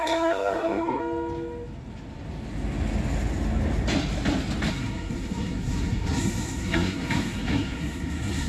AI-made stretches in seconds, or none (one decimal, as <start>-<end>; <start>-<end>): 0.0-1.0; 4.7-8.5